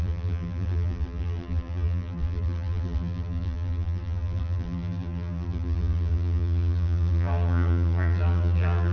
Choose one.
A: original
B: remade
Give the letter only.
B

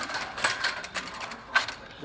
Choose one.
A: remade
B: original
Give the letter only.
B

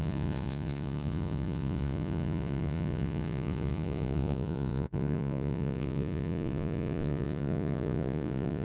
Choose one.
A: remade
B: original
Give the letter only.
A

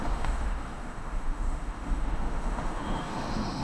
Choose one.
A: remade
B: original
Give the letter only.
A